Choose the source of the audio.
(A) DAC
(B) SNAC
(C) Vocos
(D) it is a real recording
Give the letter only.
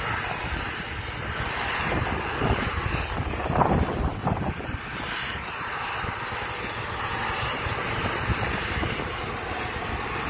D